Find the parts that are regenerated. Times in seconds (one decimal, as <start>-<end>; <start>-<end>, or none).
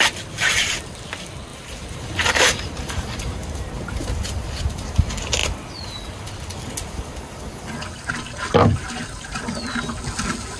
1.5-4.2